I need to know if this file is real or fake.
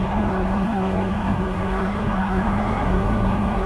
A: fake